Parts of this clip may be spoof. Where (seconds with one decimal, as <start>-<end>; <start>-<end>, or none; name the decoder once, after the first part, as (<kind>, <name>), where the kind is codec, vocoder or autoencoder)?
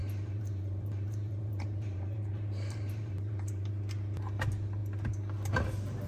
0.0-3.7 (vocoder, BigVGAN v2)